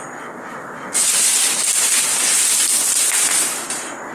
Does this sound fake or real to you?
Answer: real